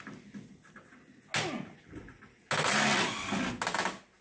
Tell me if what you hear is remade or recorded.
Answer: recorded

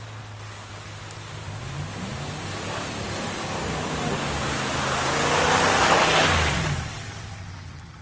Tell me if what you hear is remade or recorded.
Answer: recorded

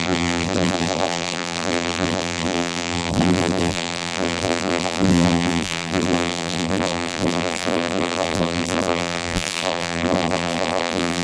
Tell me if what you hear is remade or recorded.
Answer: remade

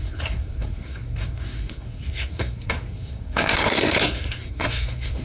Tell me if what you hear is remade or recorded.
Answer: remade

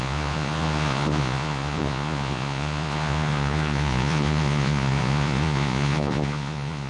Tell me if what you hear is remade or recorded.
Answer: remade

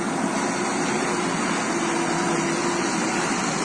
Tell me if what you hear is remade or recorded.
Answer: recorded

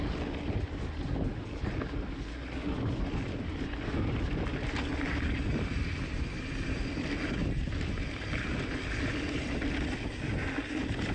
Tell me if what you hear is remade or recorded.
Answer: recorded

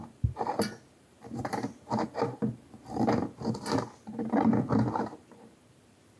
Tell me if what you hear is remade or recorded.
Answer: remade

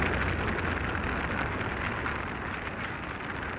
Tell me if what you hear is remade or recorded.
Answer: recorded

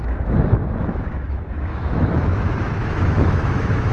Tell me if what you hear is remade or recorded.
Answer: remade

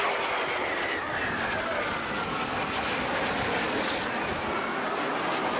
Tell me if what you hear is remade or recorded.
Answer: recorded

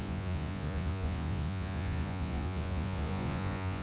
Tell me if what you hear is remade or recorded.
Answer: remade